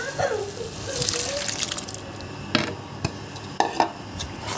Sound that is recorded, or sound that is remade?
recorded